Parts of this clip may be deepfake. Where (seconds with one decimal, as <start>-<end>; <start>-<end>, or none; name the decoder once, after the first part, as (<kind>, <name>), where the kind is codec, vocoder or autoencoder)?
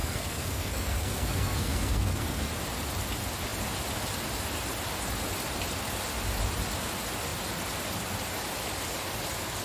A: 0.0-2.5 (codec, SNAC)